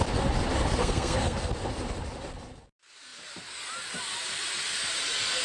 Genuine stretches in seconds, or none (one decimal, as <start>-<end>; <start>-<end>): 0.0-0.8; 1.5-5.4